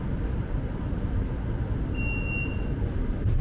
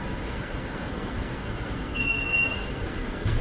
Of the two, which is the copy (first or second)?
second